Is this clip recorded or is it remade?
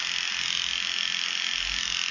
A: recorded